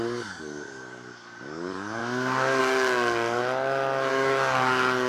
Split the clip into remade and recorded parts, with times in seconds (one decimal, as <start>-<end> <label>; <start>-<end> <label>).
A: 0.0-2.0 remade; 2.0-2.6 recorded; 2.6-3.4 remade; 3.4-4.1 recorded; 4.1-5.1 remade